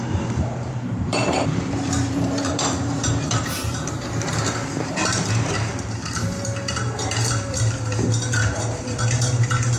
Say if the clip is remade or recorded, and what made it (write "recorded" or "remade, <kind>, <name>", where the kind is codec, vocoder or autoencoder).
remade, vocoder, BigVGAN v2